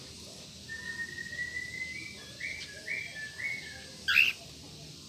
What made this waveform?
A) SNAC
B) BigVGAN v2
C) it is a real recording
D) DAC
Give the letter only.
C